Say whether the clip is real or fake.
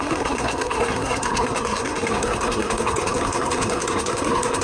fake